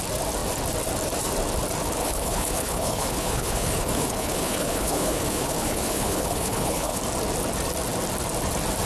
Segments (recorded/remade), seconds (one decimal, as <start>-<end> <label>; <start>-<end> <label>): 0.0-2.0 recorded; 2.0-7.0 remade; 7.0-8.9 recorded